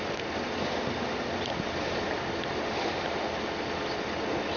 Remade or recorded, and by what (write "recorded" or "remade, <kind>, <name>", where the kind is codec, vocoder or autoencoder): remade, vocoder, BigVGAN v2